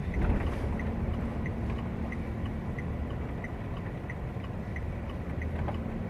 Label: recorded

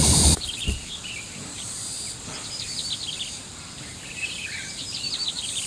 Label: remade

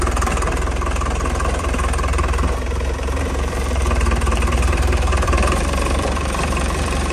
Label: remade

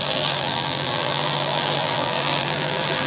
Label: remade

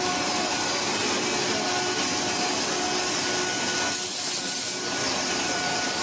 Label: recorded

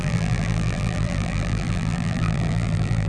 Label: remade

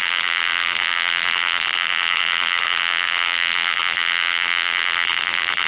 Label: remade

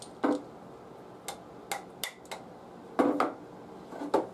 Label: recorded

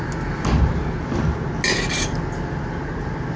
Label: recorded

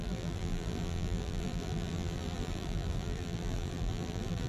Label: remade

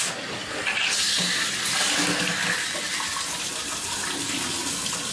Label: recorded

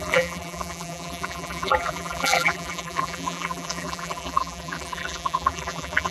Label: remade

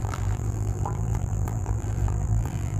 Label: remade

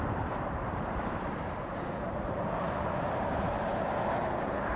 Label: remade